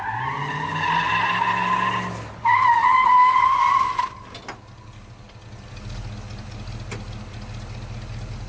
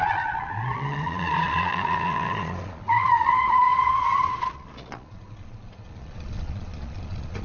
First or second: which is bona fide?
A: first